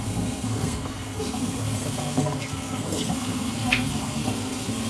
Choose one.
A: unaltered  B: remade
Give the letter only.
B